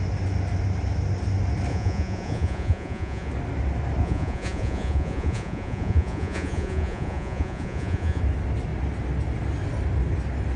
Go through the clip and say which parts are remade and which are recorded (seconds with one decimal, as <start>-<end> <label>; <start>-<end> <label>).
0.0-1.7 recorded; 1.7-3.3 remade; 3.3-4.0 recorded; 4.0-8.2 remade; 8.2-10.6 recorded